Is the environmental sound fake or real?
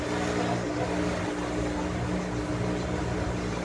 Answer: real